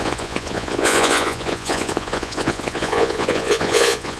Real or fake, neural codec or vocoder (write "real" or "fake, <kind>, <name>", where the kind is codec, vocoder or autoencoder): fake, vocoder, Vocos